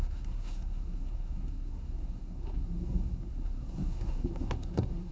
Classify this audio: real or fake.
fake